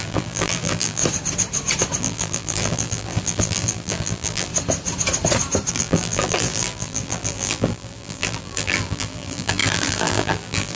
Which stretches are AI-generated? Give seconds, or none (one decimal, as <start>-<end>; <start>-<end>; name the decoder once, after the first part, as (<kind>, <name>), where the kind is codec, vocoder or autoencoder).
0.0-1.0 (vocoder, BigVGAN v2); 2.0-4.5; 5.7-10.8